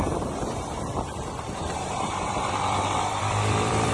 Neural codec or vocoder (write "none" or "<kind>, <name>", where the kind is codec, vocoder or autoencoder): vocoder, BigVGAN v2